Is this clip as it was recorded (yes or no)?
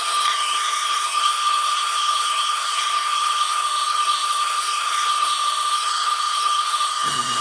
no